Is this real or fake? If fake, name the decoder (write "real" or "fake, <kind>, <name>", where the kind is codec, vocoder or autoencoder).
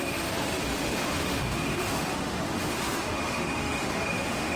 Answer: fake, autoencoder, DAC-VAE